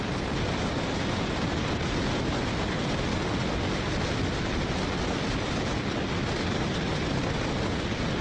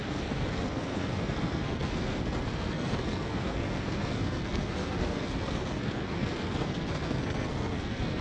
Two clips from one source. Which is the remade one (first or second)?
second